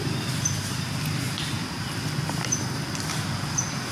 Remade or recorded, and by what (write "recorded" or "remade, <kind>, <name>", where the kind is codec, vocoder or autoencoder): recorded